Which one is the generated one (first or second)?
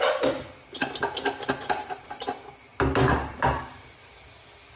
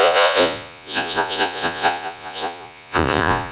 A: second